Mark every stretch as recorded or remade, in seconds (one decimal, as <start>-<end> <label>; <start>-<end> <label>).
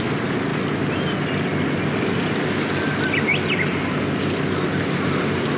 0.0-5.6 recorded